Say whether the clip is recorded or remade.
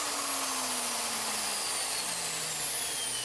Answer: recorded